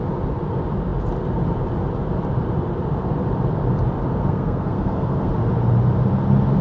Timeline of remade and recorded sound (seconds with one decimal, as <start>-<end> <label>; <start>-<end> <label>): 0.0-4.2 recorded; 4.2-5.3 remade; 5.3-6.6 recorded